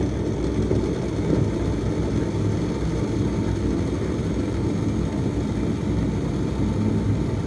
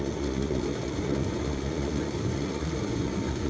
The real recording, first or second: first